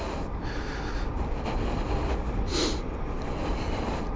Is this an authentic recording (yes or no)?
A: yes